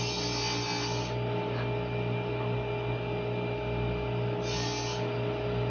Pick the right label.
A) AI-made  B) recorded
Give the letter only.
B